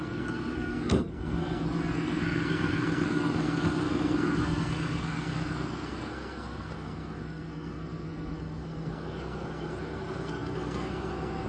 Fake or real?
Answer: fake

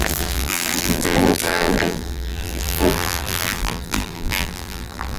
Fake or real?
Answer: fake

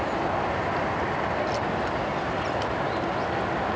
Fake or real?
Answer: real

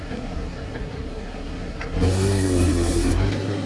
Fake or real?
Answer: fake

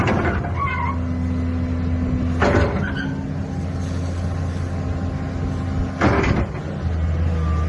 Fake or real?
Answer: real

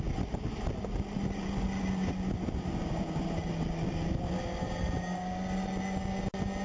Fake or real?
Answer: real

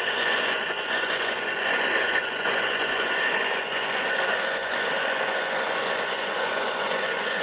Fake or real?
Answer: fake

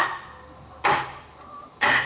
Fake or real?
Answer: real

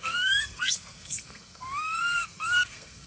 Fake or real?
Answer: fake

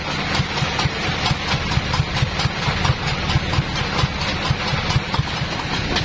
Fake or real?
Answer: real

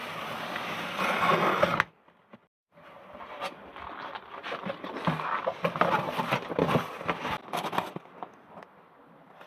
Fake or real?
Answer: real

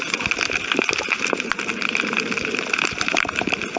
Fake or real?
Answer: fake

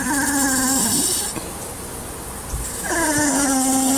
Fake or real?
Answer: fake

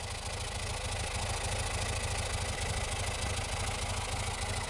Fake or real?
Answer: real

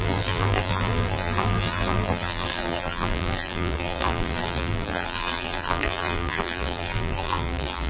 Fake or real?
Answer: fake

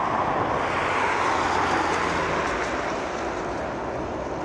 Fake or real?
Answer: real